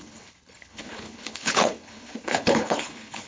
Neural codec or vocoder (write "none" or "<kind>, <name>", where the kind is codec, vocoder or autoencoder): codec, HILCodec